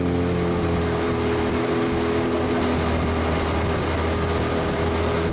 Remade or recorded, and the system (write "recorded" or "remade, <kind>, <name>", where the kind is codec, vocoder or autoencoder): recorded